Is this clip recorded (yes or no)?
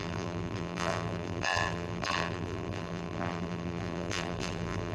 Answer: no